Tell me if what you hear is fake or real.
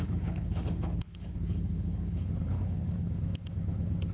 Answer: fake